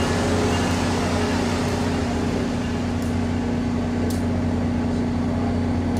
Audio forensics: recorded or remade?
recorded